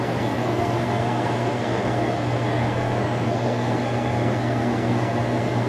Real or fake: fake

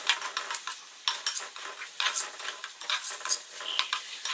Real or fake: real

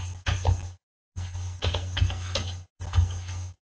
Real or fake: fake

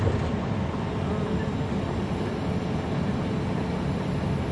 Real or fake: real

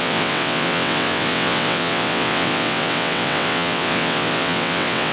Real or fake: fake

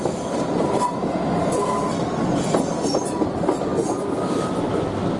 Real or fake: real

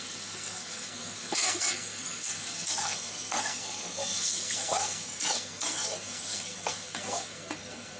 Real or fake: fake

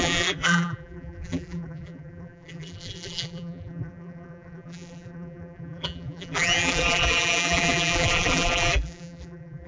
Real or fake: fake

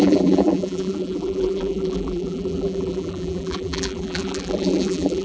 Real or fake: fake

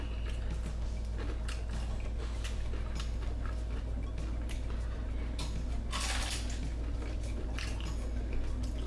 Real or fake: real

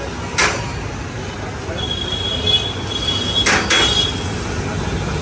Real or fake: real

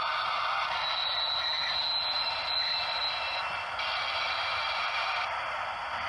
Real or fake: real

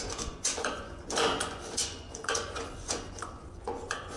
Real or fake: fake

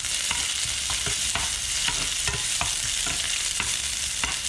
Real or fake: real